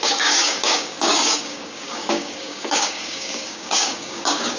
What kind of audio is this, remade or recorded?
remade